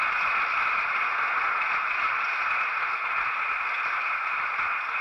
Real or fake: real